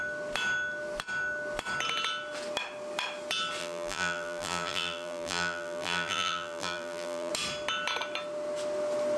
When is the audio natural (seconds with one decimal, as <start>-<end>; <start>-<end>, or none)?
0.0-3.6; 7.3-9.2